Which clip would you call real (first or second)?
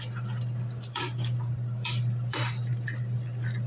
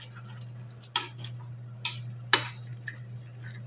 second